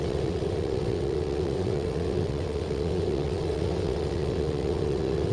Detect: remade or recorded remade